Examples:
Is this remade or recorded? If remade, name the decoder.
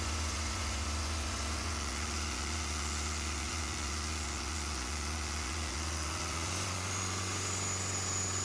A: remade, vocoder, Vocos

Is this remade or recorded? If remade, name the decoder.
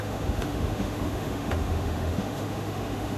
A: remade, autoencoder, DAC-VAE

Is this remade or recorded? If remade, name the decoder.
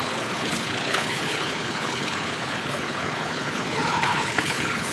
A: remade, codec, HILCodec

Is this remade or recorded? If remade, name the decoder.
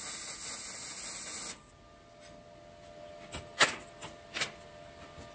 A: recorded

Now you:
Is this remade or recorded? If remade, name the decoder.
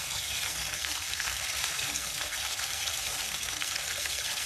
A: remade, codec, SNAC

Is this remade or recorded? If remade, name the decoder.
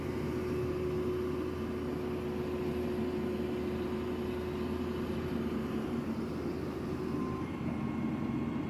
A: recorded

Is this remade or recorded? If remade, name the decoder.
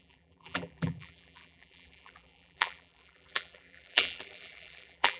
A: remade, vocoder, BigVGAN v2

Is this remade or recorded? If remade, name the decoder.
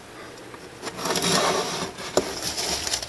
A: recorded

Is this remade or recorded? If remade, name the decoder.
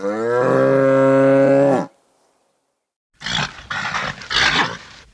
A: recorded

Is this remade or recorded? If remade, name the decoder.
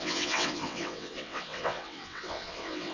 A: remade, vocoder, WaveNeXt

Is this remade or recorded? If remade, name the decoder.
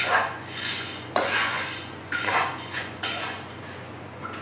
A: remade, vocoder, Vocos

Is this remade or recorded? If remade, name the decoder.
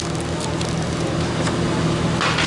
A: recorded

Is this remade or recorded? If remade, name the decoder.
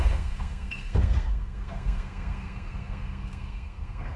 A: remade, codec, SNAC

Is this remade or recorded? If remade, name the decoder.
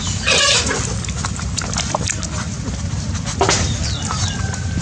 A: recorded